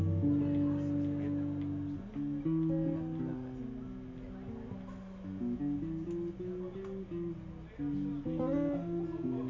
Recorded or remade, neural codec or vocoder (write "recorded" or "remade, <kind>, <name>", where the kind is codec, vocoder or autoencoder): recorded